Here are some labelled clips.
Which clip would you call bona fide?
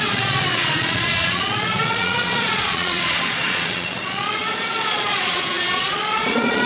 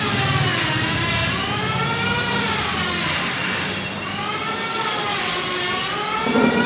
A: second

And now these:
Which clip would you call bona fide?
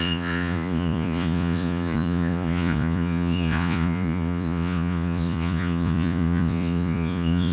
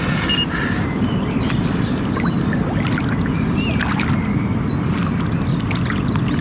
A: second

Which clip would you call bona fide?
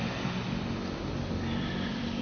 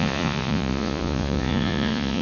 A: first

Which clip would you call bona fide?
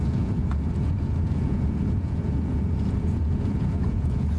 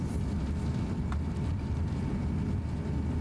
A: second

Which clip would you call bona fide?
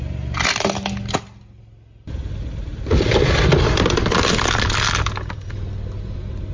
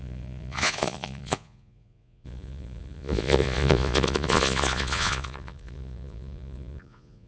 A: first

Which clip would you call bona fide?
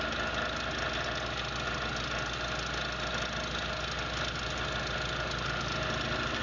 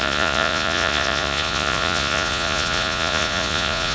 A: first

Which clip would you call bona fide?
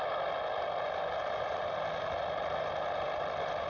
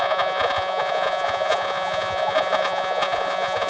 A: first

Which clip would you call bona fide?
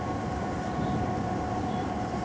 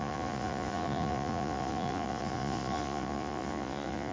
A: first